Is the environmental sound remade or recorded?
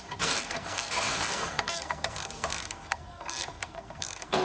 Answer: remade